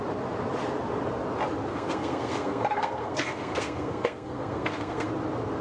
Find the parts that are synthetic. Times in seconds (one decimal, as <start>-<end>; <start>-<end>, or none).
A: 1.7-5.1